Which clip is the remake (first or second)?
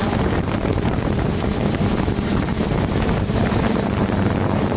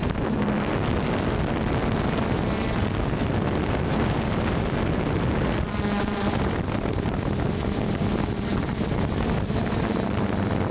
first